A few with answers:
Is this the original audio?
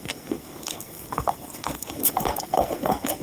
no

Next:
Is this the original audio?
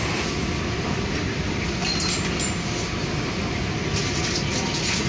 yes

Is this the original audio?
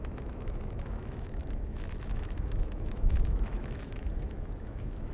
no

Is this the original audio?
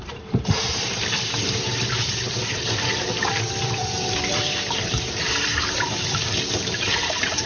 no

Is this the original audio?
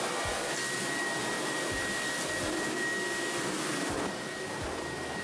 no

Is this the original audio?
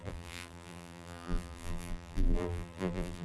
no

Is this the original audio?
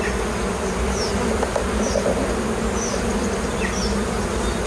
yes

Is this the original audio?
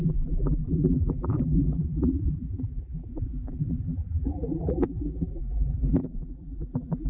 no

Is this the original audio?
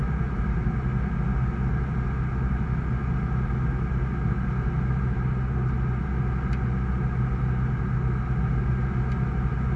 yes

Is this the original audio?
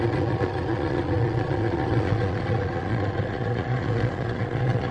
no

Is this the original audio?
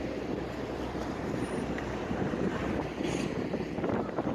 no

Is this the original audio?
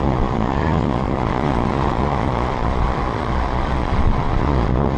no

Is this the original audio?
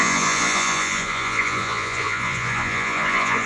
no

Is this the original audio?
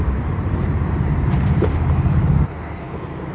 no